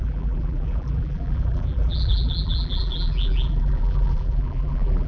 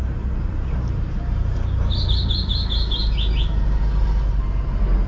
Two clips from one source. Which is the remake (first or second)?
first